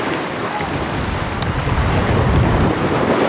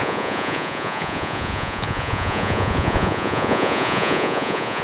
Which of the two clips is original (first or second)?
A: first